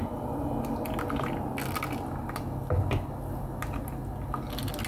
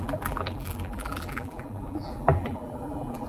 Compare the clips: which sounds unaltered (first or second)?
first